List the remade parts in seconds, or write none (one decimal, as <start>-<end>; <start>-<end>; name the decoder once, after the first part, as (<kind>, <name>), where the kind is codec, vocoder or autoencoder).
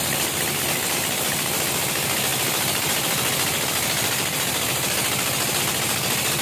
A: none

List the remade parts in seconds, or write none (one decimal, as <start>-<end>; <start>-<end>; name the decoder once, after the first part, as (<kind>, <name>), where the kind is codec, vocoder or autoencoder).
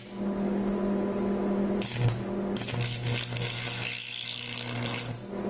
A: none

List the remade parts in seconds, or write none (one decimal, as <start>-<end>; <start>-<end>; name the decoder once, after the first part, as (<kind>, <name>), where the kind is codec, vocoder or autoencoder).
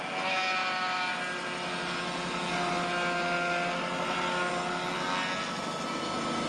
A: none